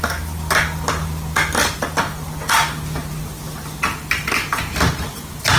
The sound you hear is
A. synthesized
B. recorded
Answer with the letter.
B